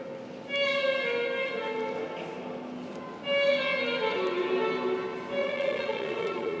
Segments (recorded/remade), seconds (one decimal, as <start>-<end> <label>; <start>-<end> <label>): 0.0-5.4 recorded; 5.4-6.6 remade